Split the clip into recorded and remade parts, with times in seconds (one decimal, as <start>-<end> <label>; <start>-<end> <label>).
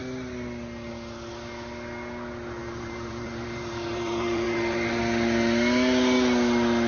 0.0-2.6 recorded; 2.6-5.0 remade; 5.0-6.9 recorded